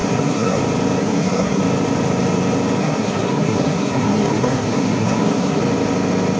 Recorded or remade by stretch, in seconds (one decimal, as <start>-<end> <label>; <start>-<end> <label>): 0.0-0.6 remade; 0.6-1.0 recorded; 1.0-1.6 remade; 1.6-2.8 recorded; 2.8-5.6 remade; 5.6-6.4 recorded